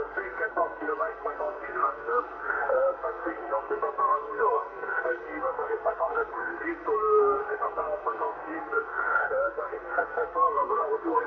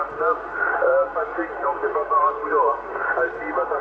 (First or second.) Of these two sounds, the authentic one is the second